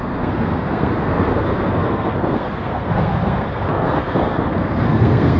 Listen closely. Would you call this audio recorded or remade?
remade